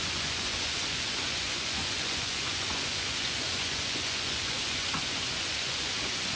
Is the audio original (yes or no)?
no